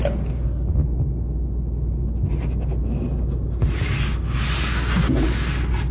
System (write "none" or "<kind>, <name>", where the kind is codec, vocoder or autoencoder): none